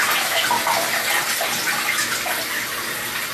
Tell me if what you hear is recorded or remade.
recorded